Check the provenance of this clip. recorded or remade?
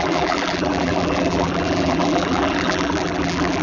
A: remade